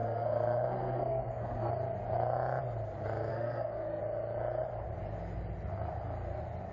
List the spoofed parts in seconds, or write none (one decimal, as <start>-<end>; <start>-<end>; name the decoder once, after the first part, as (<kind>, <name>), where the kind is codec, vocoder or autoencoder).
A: 0.0-1.7 (codec, SNAC); 3.3-4.0